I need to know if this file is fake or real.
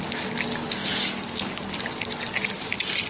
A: real